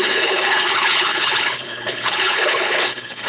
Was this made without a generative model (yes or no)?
no